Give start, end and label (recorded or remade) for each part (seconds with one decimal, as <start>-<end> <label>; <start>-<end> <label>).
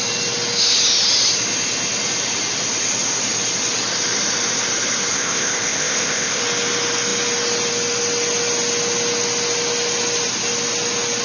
0.0-5.1 recorded; 5.1-6.4 remade; 6.4-11.2 recorded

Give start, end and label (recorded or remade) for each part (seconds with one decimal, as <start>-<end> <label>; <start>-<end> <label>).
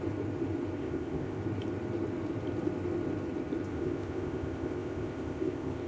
0.0-0.8 recorded; 0.8-1.4 remade; 1.4-3.7 recorded; 3.7-5.9 remade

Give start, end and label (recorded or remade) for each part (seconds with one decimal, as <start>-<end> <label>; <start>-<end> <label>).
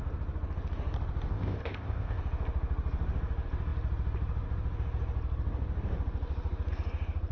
0.0-1.3 recorded; 1.3-2.2 remade; 2.2-7.3 recorded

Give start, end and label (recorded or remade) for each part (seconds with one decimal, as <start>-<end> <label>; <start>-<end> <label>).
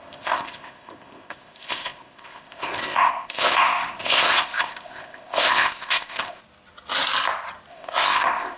0.0-6.4 remade; 6.4-7.7 recorded; 7.7-8.6 remade